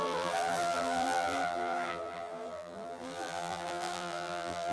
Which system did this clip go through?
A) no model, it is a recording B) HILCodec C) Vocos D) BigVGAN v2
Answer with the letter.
D